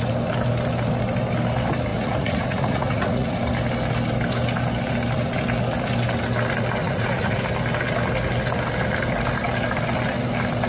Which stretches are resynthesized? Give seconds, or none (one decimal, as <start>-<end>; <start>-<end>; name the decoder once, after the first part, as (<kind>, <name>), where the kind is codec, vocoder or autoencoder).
1.9-3.4 (vocoder, Vocos); 6.8-7.4